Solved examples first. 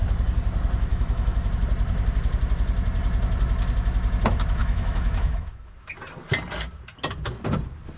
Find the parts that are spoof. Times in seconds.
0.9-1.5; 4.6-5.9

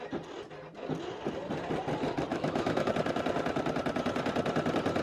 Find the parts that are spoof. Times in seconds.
2.3-2.9

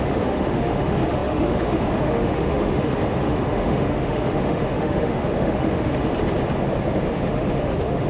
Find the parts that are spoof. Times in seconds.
0.0-6.1; 7.1-8.1

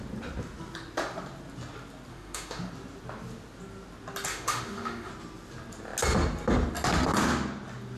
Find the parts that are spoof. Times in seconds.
2.1-2.7; 4.3-5.1

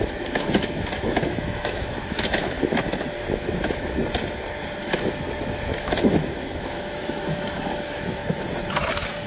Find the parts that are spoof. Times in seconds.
0.0-4.0; 4.8-8.2

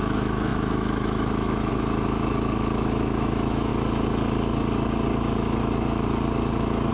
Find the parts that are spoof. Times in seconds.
0.0-3.7